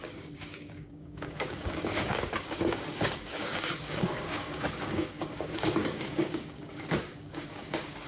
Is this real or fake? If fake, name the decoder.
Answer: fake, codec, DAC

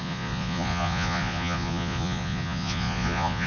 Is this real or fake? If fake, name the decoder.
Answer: fake, vocoder, Vocos